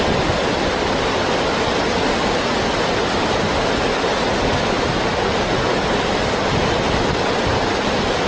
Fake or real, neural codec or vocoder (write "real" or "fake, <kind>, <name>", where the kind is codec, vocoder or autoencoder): real